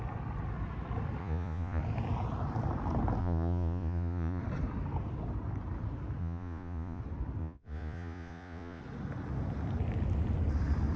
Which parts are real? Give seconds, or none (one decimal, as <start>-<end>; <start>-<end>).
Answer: 0.0-1.2; 1.8-3.2; 4.4-6.2; 7.0-7.4; 8.8-11.0